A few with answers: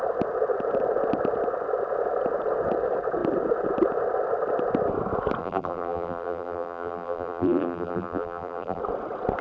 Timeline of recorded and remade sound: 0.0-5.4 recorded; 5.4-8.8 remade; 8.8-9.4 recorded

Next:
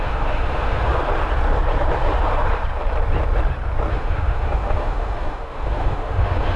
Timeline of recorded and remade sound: 0.0-0.9 remade; 0.9-3.9 recorded; 3.9-6.6 remade

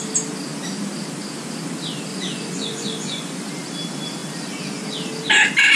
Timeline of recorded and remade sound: 0.0-2.1 recorded; 2.1-3.5 remade; 3.5-5.8 recorded

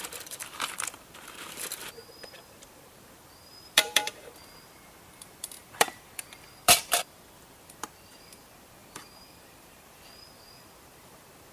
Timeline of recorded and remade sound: 0.0-11.5 remade

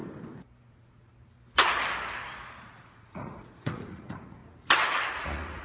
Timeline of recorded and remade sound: 0.0-0.7 recorded; 0.7-1.1 remade; 1.1-2.6 recorded; 2.6-4.4 remade; 4.4-5.1 recorded; 5.1-5.6 remade